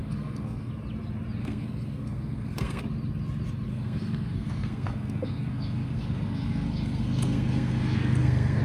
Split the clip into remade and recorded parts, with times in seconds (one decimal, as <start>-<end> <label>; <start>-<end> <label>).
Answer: 0.0-0.7 remade; 0.7-1.4 recorded; 1.4-2.8 remade; 2.8-3.7 recorded; 3.7-8.6 remade